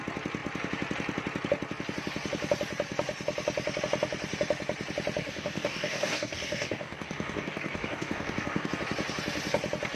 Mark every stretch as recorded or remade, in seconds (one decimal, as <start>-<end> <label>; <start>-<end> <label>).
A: 0.0-5.2 recorded; 5.2-8.7 remade; 8.7-10.0 recorded